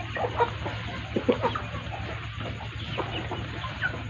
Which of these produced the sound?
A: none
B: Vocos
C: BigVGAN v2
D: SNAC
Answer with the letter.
A